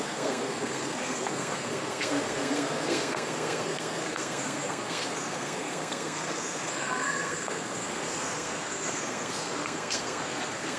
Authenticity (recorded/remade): remade